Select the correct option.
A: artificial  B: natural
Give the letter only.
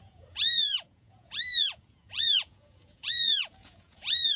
A